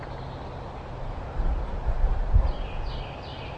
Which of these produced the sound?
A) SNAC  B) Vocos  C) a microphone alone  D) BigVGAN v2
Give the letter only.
C